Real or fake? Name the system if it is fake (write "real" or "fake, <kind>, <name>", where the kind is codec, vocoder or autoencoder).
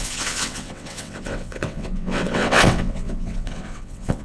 fake, vocoder, WaveNeXt